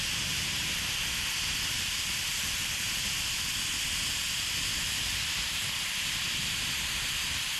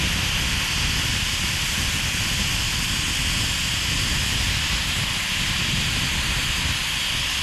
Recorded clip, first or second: second